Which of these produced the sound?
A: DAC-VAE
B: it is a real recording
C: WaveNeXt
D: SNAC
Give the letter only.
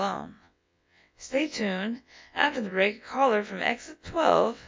C